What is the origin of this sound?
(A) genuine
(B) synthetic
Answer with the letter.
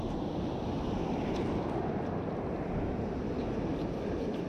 A